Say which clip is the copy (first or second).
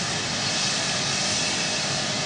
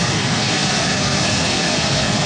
second